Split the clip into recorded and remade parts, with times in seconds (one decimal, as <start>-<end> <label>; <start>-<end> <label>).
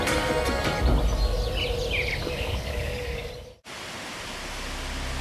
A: 0.0-2.2 recorded; 2.2-3.3 remade; 3.3-5.2 recorded